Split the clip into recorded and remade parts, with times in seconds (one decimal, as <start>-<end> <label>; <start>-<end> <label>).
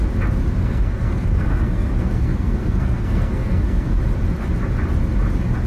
0.0-0.6 recorded; 0.6-4.0 remade; 4.0-5.7 recorded